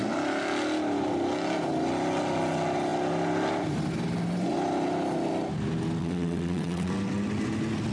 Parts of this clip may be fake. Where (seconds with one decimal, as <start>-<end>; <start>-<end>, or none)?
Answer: 6.0-6.9